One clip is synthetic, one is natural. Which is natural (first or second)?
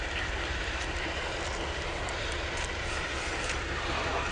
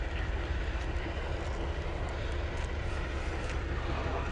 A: second